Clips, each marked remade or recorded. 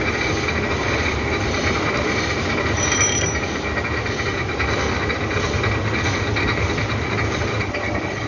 recorded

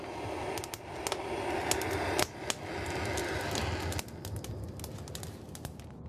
recorded